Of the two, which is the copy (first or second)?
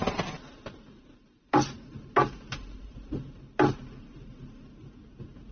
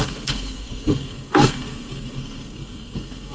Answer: second